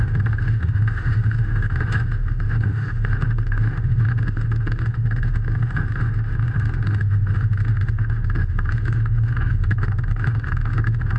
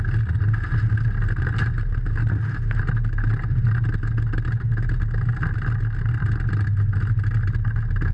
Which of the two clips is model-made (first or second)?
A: first